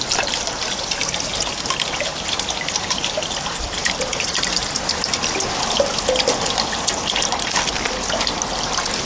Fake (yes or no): no